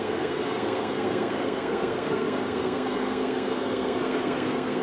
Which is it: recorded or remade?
remade